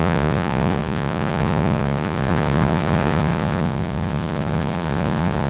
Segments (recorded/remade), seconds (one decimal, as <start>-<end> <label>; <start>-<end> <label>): 0.0-5.5 remade